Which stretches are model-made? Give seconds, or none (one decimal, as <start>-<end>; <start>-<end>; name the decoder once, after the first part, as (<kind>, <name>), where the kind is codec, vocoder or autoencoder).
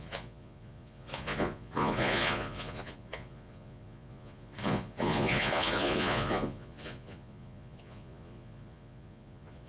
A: 0.0-9.7 (vocoder, Vocos)